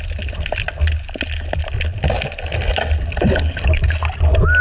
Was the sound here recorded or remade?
recorded